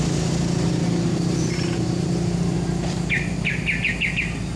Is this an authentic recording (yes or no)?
yes